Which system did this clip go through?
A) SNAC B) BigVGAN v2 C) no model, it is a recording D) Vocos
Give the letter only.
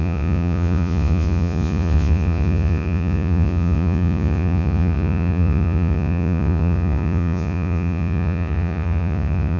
D